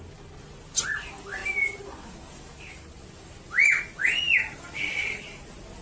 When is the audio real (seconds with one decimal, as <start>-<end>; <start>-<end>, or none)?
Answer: 0.0-5.8